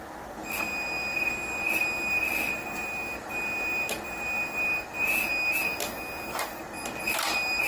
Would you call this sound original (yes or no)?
yes